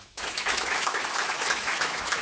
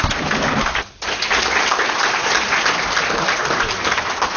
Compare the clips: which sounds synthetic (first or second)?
first